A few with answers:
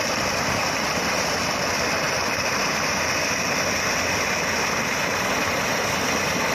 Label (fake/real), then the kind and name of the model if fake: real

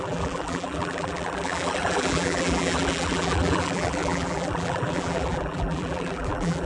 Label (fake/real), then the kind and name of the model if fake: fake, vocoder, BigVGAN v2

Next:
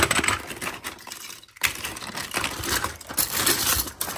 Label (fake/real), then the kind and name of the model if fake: real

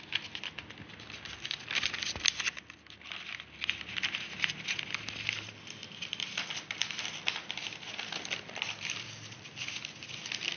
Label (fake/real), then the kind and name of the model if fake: real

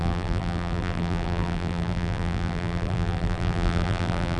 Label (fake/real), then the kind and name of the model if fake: fake, vocoder, BigVGAN v2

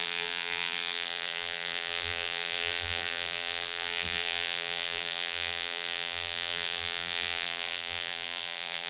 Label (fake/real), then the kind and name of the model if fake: fake, vocoder, BigVGAN v2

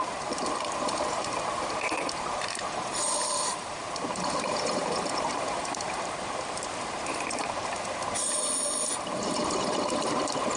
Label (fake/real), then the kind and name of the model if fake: fake, vocoder, BigVGAN v2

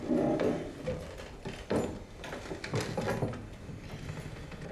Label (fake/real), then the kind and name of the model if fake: real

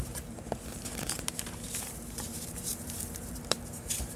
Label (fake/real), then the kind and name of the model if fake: fake, vocoder, BigVGAN v2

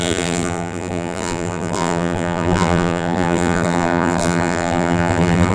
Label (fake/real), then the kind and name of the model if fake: fake, vocoder, BigVGAN v2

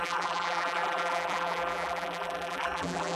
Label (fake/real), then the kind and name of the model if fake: fake, vocoder, BigVGAN v2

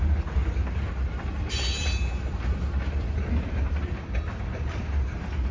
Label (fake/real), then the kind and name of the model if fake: real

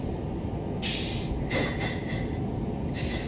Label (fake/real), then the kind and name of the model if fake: real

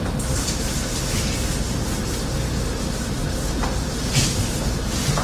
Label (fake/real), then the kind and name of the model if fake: fake, vocoder, BigVGAN v2